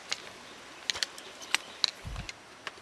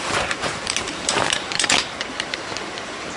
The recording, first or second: first